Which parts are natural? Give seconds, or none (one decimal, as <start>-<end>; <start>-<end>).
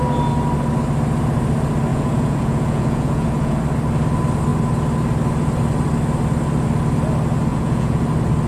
0.0-1.9; 3.6-7.5; 8.0-8.5